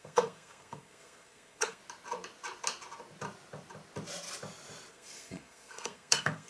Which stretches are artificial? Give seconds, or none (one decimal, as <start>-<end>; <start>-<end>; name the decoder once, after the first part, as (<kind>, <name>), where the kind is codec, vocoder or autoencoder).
0.0-1.8 (codec, SNAC); 4.9-6.5